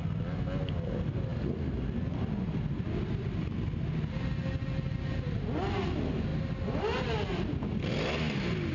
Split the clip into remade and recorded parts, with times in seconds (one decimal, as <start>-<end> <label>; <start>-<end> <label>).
0.0-8.7 recorded